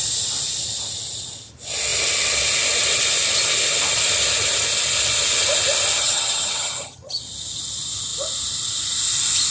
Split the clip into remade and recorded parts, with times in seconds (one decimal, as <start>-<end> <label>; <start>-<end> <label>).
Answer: 0.0-6.0 recorded; 6.0-7.2 remade; 7.2-9.5 recorded